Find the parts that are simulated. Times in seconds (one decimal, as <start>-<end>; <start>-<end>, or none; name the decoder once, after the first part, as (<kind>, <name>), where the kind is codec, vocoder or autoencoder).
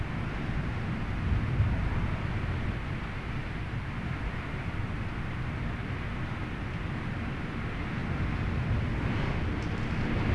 none